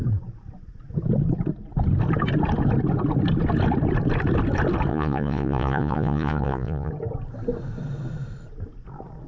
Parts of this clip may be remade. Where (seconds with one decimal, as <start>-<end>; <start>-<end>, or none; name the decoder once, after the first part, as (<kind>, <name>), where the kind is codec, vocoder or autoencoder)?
4.9-6.9 (vocoder, Vocos)